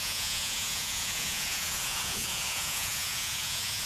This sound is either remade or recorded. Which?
remade